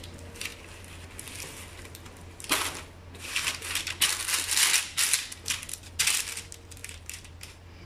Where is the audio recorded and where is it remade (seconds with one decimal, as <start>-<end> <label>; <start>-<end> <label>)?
0.0-6.8 recorded; 6.8-7.4 remade; 7.4-7.9 recorded